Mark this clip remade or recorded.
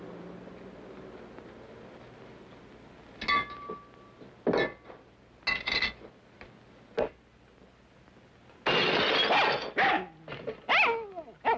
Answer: recorded